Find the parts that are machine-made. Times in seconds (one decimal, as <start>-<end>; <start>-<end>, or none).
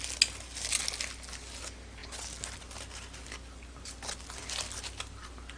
none